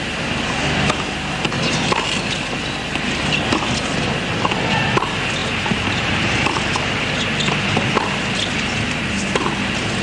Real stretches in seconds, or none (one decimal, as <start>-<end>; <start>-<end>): 0.0-5.4; 7.0-10.0